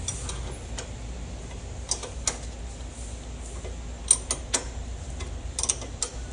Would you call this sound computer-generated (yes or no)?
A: no